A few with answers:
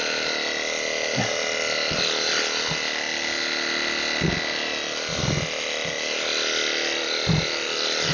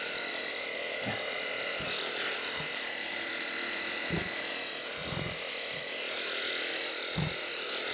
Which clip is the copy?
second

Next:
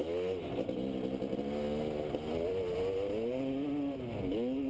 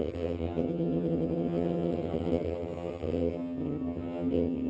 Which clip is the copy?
second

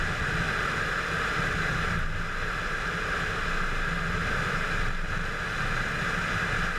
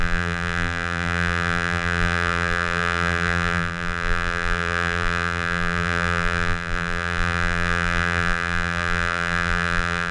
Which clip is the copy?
second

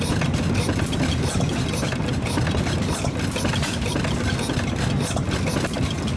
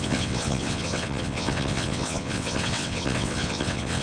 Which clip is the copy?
second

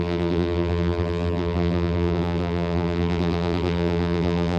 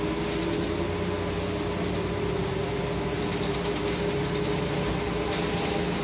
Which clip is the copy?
first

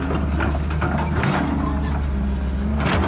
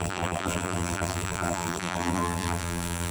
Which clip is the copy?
second